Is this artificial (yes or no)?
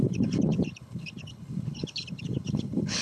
yes